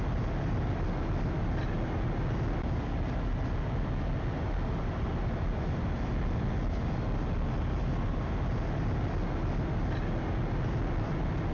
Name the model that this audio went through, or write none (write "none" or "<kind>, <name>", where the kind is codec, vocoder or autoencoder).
none